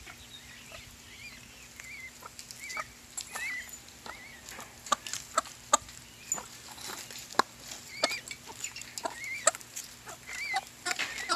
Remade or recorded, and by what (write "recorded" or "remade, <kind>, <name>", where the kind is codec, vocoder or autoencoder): recorded